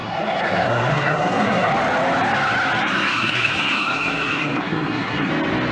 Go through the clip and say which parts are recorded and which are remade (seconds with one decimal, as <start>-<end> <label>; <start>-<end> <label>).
0.0-1.7 remade; 1.7-2.8 recorded; 2.8-5.3 remade; 5.3-5.7 recorded